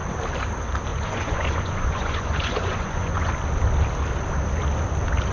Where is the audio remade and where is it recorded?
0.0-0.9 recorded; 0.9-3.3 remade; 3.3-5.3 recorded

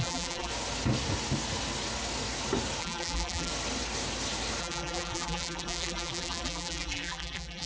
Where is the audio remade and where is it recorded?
0.0-0.5 remade; 0.5-2.8 recorded; 2.8-3.5 remade; 3.5-4.6 recorded; 4.6-7.7 remade

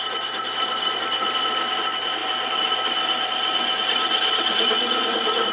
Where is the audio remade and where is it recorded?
0.0-5.5 recorded

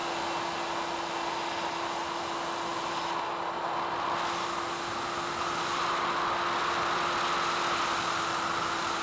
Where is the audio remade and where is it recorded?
0.0-9.0 recorded